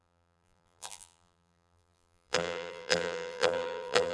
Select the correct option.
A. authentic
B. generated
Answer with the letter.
B